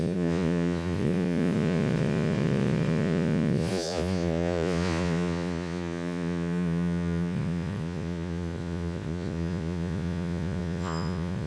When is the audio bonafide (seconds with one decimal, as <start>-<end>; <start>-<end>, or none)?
none